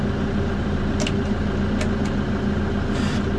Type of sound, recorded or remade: recorded